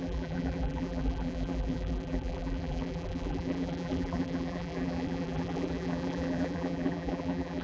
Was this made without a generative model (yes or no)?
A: no